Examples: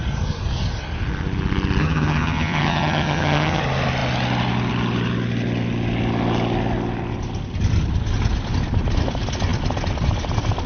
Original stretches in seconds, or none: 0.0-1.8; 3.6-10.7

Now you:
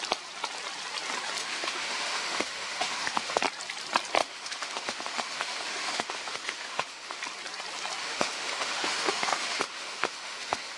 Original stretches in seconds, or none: 0.0-1.4; 3.4-4.2; 7.2-8.0

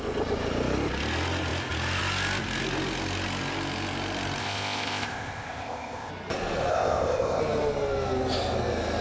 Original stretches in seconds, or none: 0.0-4.4; 6.1-6.7; 7.4-9.0

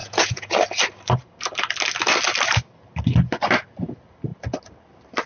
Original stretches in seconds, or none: 0.5-5.3

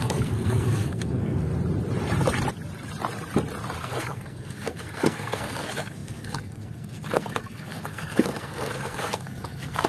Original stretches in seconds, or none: 1.5-3.8

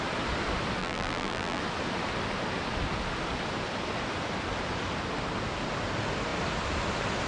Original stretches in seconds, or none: 0.0-0.8; 1.6-7.3

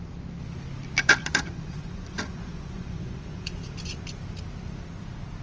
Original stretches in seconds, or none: 0.0-1.2; 3.5-5.4

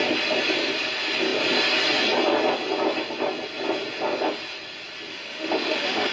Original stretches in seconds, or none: 0.0-5.1